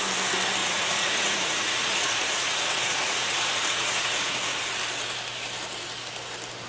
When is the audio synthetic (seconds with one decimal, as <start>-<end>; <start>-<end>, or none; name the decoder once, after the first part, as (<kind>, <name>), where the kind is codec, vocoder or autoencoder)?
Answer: 0.6-4.6 (vocoder, Vocos)